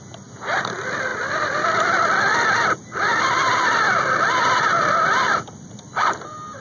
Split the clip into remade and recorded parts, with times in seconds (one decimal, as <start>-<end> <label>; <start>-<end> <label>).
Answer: 0.0-6.6 recorded